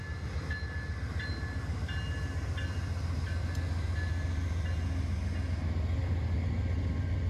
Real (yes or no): yes